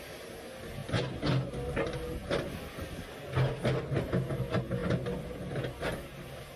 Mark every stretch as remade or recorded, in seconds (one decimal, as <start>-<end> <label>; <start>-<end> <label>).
0.0-6.6 recorded